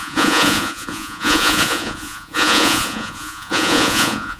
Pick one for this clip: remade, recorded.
remade